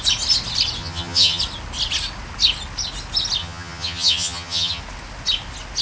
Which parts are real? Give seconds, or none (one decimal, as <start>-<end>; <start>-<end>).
0.0-0.8; 1.4-3.4; 4.8-5.8